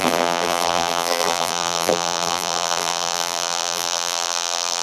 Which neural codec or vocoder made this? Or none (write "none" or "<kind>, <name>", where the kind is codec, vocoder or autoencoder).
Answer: vocoder, BigVGAN v2